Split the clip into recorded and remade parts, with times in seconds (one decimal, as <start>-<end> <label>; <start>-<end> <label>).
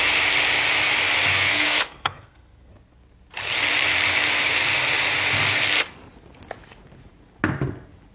0.0-1.3 recorded; 1.3-2.7 remade; 2.7-8.1 recorded